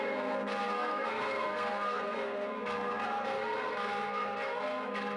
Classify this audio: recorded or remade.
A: remade